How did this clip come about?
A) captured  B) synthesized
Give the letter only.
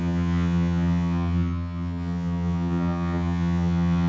B